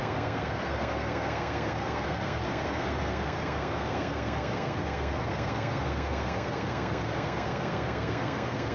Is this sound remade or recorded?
remade